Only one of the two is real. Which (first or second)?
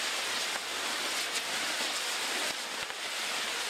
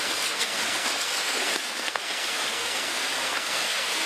first